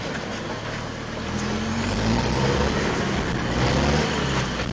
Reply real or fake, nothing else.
real